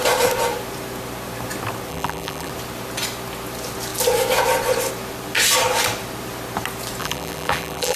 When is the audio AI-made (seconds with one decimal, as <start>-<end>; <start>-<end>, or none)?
1.9-2.5; 7.0-8.0